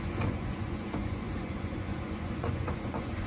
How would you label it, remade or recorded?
remade